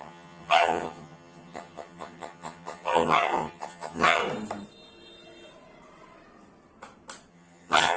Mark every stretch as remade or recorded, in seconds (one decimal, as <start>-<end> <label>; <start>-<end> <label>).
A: 0.0-4.2 remade; 4.2-7.3 recorded; 7.3-8.0 remade